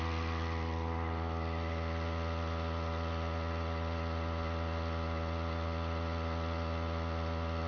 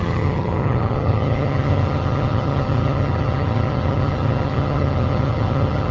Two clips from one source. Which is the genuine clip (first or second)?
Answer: first